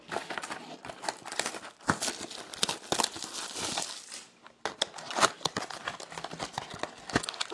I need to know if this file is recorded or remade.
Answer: recorded